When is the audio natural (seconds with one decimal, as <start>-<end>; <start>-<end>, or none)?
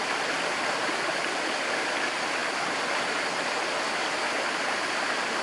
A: 0.0-5.4